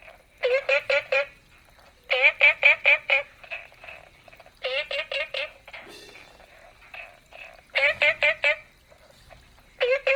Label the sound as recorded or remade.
recorded